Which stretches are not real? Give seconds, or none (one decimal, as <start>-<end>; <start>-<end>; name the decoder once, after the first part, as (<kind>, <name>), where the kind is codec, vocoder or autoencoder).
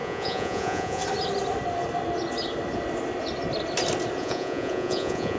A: 0.0-1.0 (vocoder, Vocos); 4.2-5.4